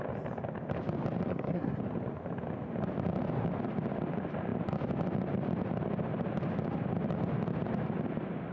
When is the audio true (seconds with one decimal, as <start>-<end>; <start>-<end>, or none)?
0.0-1.3; 1.8-8.5